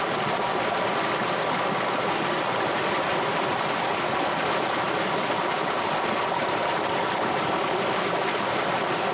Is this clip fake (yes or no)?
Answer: no